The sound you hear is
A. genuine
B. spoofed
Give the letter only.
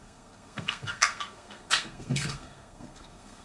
B